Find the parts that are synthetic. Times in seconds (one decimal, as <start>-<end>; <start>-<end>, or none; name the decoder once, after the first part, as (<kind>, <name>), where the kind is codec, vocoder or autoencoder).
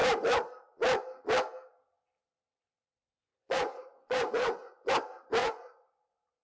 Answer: 3.3-4.9 (vocoder, Vocos); 5.4-5.9